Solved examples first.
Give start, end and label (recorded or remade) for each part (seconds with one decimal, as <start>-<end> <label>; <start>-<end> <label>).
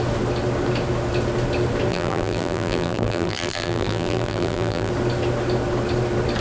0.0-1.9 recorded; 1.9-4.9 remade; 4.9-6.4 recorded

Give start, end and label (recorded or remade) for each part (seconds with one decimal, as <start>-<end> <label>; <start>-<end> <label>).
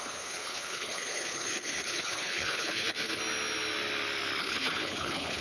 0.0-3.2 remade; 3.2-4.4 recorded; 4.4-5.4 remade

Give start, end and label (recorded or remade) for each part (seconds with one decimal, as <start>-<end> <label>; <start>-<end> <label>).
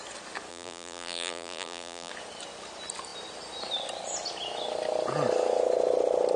0.0-0.5 recorded; 0.5-2.1 remade; 2.1-6.4 recorded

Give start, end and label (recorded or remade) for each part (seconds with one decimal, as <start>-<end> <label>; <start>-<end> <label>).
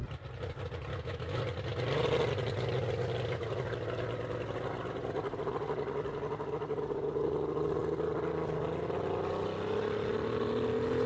0.0-0.9 recorded; 0.9-1.4 remade; 1.4-11.1 recorded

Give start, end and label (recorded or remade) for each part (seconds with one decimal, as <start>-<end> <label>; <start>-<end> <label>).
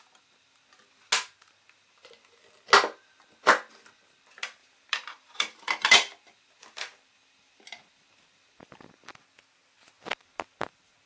0.0-4.6 recorded; 4.6-8.7 remade; 8.7-11.1 recorded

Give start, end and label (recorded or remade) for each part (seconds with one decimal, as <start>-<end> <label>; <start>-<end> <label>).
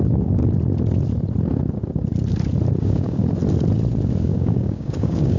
0.0-0.4 remade; 0.4-2.8 recorded; 2.8-3.2 remade; 3.2-4.2 recorded; 4.2-5.4 remade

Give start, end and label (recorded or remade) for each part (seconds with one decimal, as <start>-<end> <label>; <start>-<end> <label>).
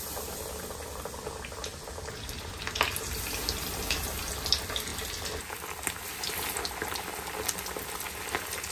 0.0-1.7 recorded; 1.7-2.6 remade; 2.6-8.7 recorded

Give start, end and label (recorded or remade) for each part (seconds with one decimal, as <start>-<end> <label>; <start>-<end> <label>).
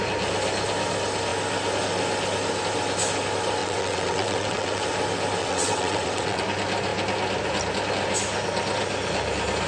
0.0-3.6 recorded; 3.6-4.8 remade; 4.8-5.4 recorded; 5.4-6.4 remade; 6.4-9.7 recorded